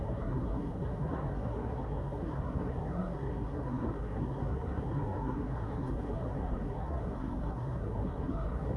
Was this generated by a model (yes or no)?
yes